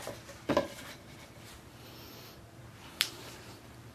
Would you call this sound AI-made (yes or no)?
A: no